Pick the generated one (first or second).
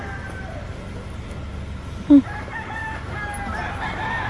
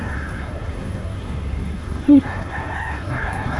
second